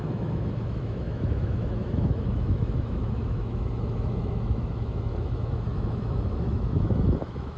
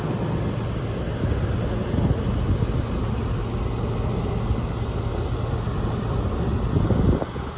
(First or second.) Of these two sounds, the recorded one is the second